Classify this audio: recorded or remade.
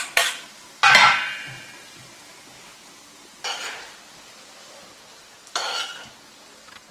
recorded